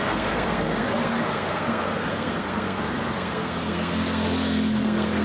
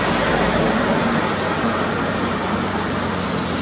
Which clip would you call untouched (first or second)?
second